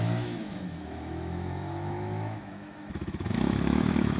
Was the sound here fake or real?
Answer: fake